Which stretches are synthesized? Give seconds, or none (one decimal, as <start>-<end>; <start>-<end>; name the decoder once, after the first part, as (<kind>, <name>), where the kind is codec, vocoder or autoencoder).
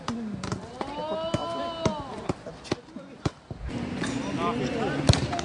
none